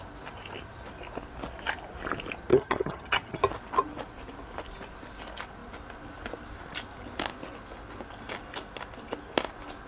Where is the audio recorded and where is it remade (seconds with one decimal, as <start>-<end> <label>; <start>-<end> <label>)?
0.0-2.5 recorded; 2.5-3.4 remade; 3.4-9.9 recorded